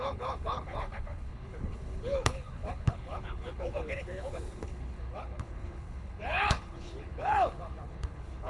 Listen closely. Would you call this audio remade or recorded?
remade